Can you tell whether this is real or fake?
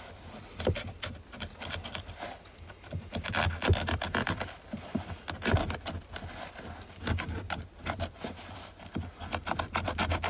real